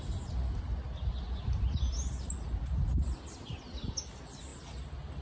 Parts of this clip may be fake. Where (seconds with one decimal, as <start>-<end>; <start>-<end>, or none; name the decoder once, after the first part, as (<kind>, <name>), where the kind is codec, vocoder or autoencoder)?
none